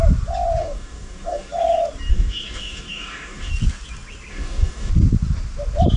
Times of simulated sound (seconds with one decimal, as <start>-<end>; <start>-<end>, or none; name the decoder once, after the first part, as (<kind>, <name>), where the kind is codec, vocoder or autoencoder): 0.6-1.5 (codec, DAC); 2.1-3.5; 4.3-4.9